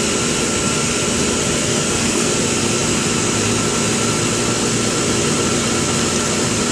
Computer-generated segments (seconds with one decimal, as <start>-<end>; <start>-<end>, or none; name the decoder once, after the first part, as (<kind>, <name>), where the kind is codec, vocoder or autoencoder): 1.6-2.3 (codec, SNAC)